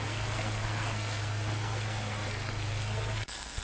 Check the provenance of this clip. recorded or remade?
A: remade